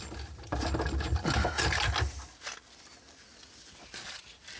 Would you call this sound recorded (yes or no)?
yes